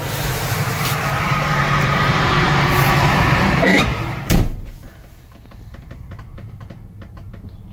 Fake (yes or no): yes